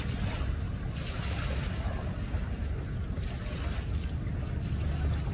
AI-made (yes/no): no